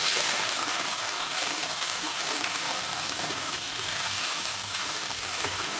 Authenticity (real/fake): fake